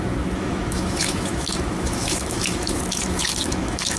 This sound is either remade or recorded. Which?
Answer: remade